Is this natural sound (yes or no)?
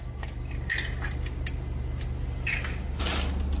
yes